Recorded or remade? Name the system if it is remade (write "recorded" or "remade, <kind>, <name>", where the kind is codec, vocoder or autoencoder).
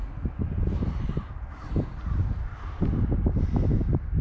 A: recorded